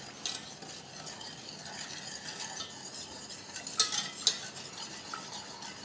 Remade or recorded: recorded